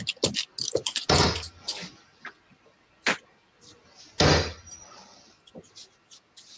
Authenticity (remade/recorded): recorded